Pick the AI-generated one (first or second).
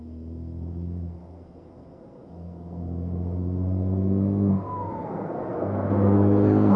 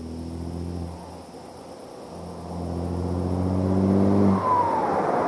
first